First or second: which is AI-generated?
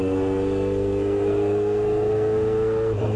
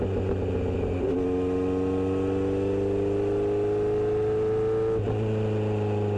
first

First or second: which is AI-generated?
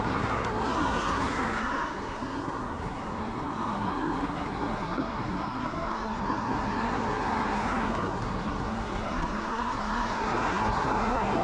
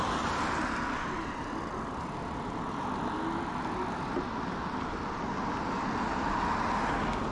first